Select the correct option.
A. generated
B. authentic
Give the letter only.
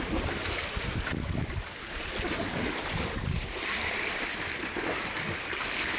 B